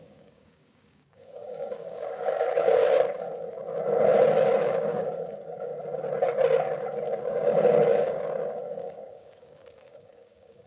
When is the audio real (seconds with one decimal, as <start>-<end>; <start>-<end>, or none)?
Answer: 2.8-4.3; 5.7-7.3